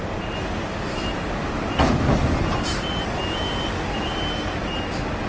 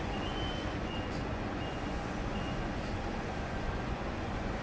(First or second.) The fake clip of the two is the second